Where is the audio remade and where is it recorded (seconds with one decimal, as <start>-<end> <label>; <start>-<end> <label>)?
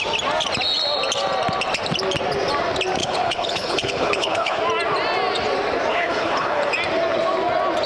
0.0-3.0 recorded; 3.0-4.6 remade; 4.6-5.9 recorded; 5.9-6.7 remade; 6.7-7.9 recorded